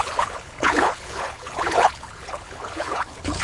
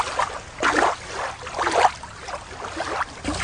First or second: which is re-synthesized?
first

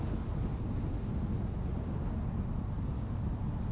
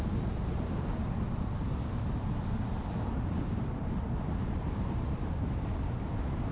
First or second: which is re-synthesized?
second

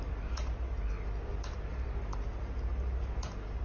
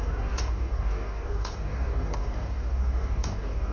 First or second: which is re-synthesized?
second